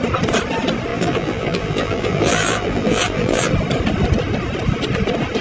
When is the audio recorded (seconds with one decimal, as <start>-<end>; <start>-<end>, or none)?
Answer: 0.0-0.9; 3.5-5.4